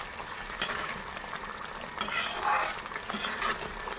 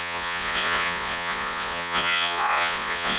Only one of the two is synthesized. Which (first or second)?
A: second